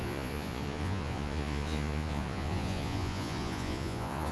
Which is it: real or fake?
fake